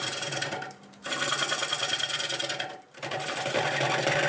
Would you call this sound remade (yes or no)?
no